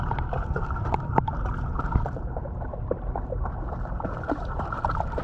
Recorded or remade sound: remade